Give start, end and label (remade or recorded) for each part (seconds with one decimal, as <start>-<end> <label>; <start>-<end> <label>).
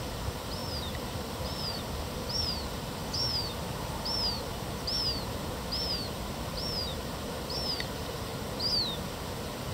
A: 0.0-3.0 remade; 3.0-6.5 recorded; 6.5-8.3 remade; 8.3-9.7 recorded